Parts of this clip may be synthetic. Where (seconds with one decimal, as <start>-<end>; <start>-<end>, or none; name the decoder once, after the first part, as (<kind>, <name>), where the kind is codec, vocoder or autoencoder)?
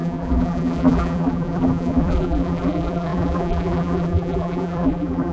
0.0-5.3 (vocoder, BigVGAN v2)